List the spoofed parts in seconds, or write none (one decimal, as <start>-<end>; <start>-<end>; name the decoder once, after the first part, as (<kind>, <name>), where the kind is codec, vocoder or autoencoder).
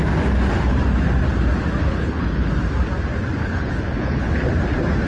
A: 1.8-2.5 (codec, HILCodec); 3.4-4.3